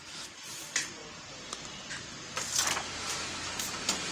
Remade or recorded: recorded